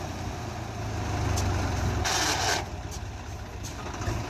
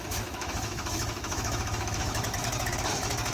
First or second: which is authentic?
first